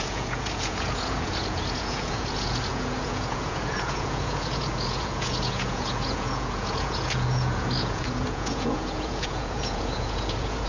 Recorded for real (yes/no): no